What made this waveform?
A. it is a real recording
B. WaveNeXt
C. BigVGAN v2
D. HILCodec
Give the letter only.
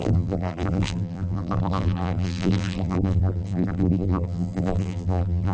C